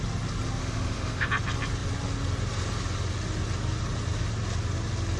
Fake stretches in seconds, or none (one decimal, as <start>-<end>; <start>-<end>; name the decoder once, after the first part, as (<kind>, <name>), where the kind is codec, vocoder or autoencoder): 0.6-1.3 (autoencoder, DAC-VAE)